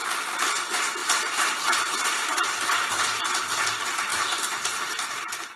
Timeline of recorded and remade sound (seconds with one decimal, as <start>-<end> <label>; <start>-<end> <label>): 0.0-1.0 recorded; 1.0-3.3 remade; 3.3-4.1 recorded; 4.1-5.6 remade